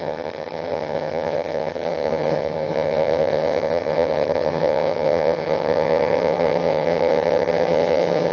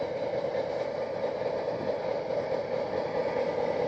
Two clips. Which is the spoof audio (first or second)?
first